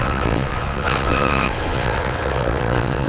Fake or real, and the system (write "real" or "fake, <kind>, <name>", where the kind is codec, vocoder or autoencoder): fake, vocoder, WaveNeXt